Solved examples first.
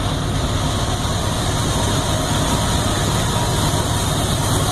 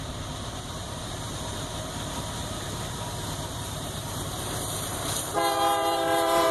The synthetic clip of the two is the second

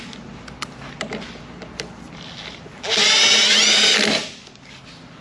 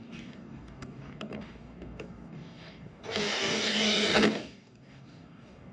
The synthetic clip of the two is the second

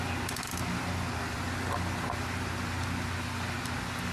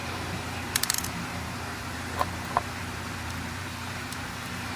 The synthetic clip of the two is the second